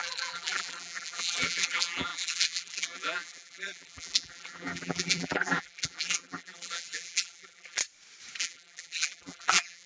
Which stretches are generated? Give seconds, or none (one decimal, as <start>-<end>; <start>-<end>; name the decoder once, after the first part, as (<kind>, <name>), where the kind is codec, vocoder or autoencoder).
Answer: 0.0-7.8 (vocoder, BigVGAN v2); 8.4-9.9